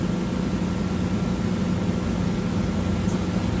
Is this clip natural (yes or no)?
yes